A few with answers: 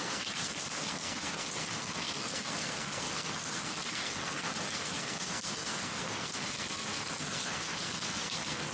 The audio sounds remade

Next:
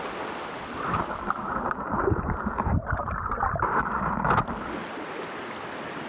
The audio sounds remade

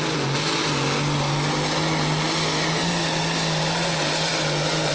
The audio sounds recorded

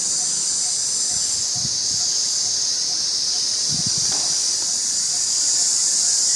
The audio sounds recorded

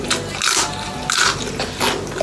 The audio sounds recorded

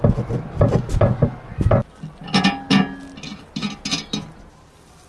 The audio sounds recorded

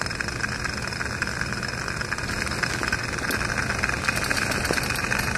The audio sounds recorded